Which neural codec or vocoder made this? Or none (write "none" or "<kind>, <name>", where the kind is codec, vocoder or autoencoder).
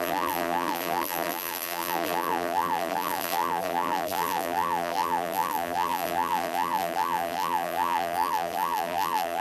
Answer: vocoder, BigVGAN v2